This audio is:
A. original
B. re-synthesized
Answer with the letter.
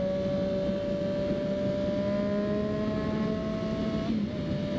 A